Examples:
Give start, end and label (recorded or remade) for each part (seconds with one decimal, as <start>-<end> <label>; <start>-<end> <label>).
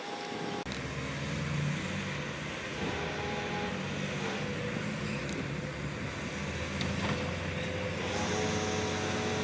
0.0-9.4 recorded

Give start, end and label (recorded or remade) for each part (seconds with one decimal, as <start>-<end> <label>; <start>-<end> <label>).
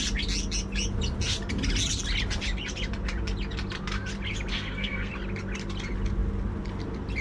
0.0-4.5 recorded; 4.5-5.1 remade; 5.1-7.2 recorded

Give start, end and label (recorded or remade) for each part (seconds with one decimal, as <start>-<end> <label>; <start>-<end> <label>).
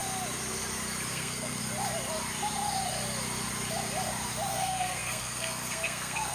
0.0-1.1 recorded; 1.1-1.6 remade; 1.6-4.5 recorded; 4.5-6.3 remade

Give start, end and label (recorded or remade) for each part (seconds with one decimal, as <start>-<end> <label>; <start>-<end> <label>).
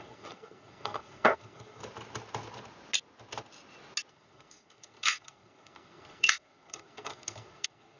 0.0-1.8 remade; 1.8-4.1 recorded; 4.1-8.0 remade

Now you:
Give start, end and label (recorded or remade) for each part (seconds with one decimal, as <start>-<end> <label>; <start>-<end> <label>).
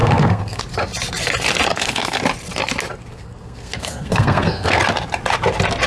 0.0-0.6 remade; 0.6-1.7 recorded; 1.7-2.2 remade; 2.2-3.1 recorded; 3.1-4.8 remade; 4.8-5.9 recorded